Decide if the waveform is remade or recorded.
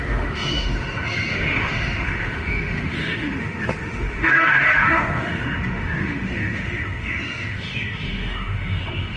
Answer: remade